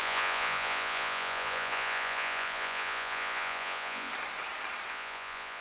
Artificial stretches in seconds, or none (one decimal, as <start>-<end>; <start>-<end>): 0.0-4.1; 4.9-5.6